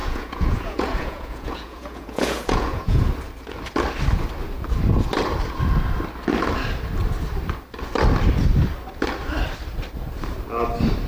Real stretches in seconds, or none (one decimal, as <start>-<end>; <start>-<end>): 3.0-11.1